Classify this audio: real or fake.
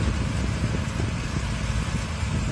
real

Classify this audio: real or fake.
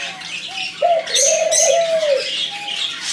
real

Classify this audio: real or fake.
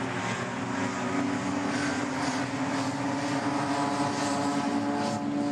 real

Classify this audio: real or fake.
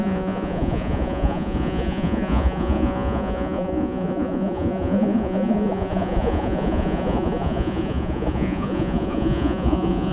fake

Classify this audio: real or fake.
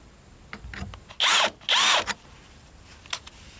real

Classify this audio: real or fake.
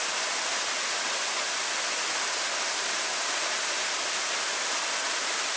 real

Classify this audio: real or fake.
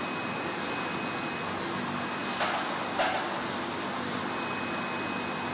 real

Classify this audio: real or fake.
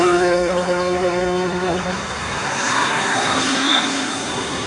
fake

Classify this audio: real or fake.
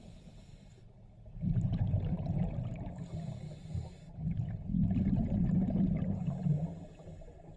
real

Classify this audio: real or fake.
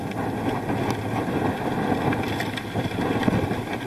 real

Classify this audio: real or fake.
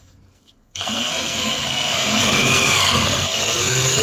fake